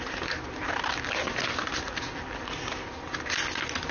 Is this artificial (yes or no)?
no